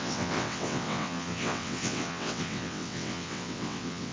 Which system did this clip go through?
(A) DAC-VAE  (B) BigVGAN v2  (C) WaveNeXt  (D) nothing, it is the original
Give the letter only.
C